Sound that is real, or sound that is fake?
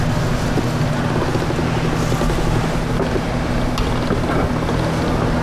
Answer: real